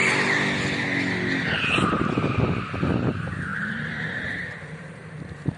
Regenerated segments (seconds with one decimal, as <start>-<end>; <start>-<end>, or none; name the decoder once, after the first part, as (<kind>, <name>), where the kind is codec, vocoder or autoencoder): 3.5-5.6 (vocoder, BigVGAN v2)